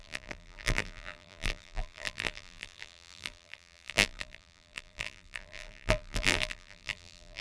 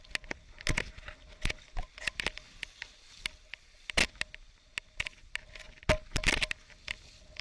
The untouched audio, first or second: second